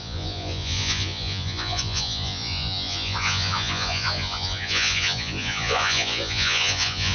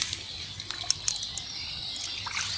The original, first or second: second